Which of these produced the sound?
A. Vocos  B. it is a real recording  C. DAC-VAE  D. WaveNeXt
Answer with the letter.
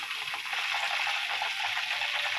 B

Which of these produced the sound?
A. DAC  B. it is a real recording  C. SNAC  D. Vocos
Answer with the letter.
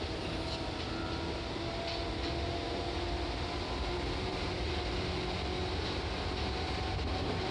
B